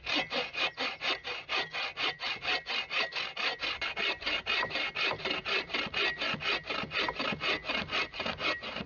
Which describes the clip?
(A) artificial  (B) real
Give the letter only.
B